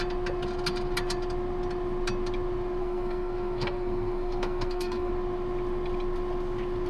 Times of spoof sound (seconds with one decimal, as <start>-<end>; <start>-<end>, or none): 2.8-5.1